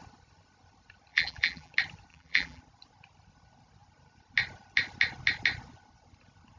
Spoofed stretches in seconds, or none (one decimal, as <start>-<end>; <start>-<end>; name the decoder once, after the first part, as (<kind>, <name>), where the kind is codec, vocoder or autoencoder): 1.1-1.7 (vocoder, BigVGAN v2); 2.1-2.6